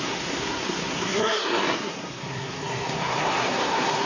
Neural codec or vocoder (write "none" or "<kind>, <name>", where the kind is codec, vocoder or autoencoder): codec, SNAC